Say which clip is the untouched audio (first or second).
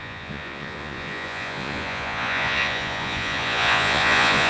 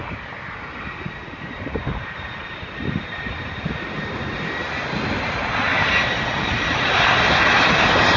second